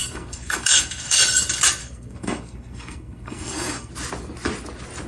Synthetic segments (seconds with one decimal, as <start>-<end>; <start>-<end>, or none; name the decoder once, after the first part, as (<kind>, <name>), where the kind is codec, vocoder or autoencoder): 0.0-1.2 (codec, SNAC); 1.8-3.9